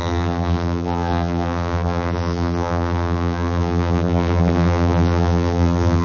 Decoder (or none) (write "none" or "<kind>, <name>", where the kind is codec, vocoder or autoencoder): vocoder, BigVGAN v2